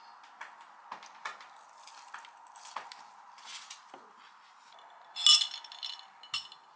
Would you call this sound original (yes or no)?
yes